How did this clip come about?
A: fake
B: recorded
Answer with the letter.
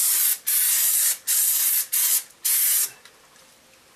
B